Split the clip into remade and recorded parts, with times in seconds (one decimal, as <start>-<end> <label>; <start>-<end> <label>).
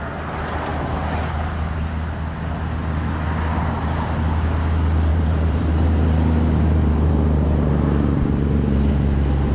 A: 0.0-5.1 recorded; 5.1-8.9 remade; 8.9-9.5 recorded